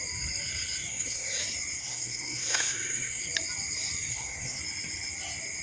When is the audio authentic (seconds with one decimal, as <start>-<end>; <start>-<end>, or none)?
0.0-0.9; 1.4-1.8; 3.2-4.1; 4.6-5.6